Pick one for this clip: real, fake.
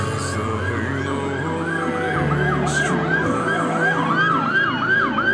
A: real